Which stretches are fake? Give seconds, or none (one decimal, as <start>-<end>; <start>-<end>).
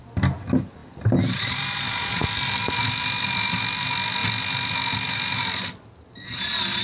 none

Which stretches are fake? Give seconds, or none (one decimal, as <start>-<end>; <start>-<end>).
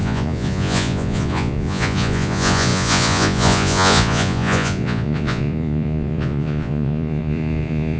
0.0-8.0